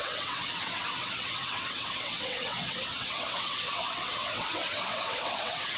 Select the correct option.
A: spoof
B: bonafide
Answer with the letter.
A